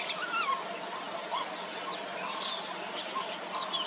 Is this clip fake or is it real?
real